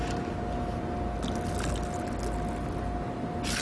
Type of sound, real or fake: real